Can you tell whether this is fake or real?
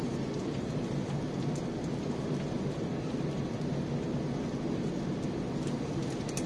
real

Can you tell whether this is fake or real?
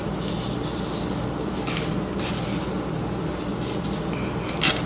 real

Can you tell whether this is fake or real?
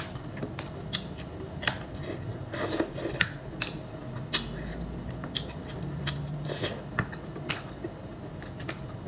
real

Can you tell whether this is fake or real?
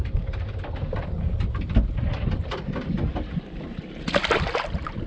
real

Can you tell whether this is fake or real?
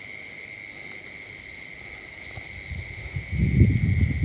real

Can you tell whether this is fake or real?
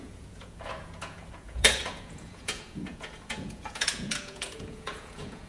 fake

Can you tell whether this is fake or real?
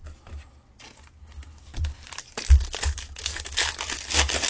real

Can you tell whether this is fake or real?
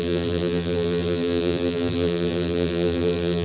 fake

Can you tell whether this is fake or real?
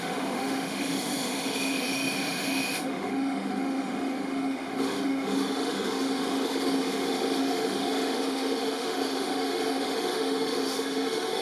fake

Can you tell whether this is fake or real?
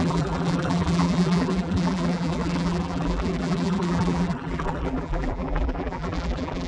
fake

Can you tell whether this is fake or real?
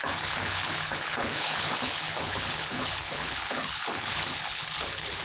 fake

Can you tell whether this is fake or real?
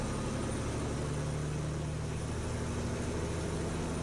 real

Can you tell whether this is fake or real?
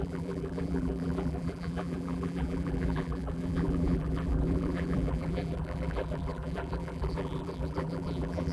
fake